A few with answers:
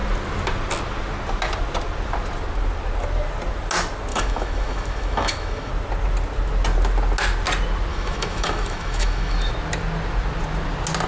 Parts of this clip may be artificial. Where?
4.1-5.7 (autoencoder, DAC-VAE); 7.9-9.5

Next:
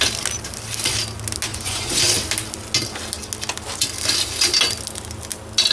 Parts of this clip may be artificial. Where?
1.5-2.0 (vocoder, Vocos)

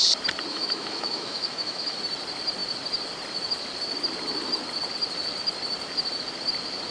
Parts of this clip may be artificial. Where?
0.5-2.0 (autoencoder, DAC-VAE)

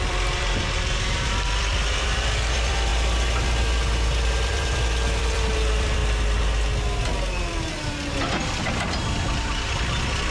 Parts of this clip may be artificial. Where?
0.0-6.0 (vocoder, BigVGAN v2); 8.6-10.3

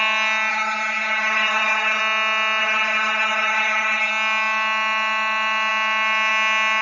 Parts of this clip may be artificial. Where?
0.5-2.0 (codec, HILCodec); 2.6-4.1

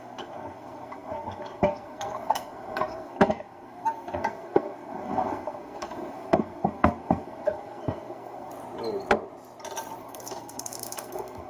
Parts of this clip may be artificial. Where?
0.0-8.5 (codec, SNAC); 10.0-11.5

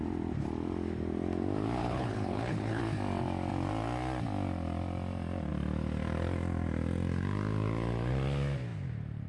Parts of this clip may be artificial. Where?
1.8-2.8 (codec, HILCodec)

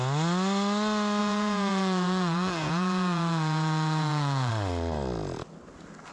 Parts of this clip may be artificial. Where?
1.2-4.5 (vocoder, Vocos)